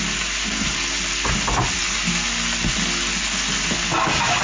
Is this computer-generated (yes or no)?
no